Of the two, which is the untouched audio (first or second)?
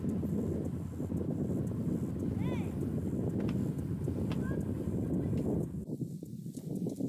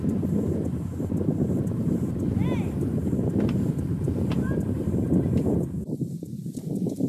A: first